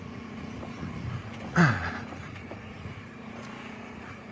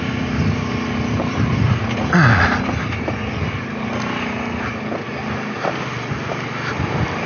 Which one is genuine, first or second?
second